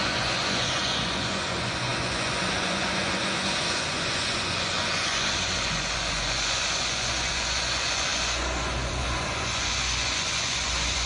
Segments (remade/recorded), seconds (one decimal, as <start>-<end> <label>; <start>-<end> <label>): 0.0-11.1 remade